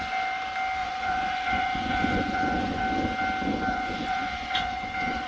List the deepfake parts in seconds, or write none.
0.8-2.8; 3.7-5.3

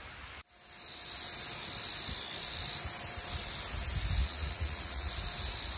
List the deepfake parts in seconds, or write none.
4.2-5.1

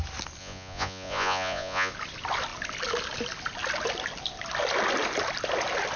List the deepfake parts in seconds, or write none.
0.4-1.9

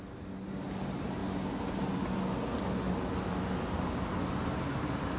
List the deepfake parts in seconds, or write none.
none

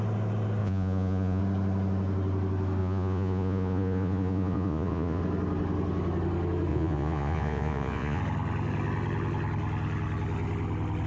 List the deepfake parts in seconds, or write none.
0.6-1.4; 2.8-5.2; 6.7-8.2

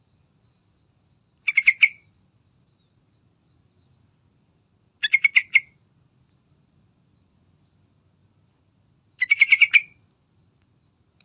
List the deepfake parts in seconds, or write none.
none